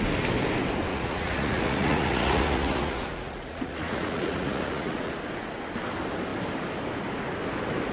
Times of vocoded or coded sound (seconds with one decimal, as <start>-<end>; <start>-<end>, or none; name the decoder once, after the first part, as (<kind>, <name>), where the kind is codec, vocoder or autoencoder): 0.9-5.1 (vocoder, Vocos)